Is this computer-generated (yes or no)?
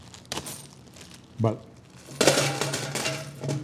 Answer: no